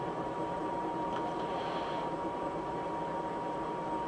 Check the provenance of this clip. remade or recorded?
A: remade